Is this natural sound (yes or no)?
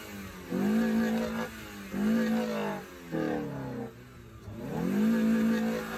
yes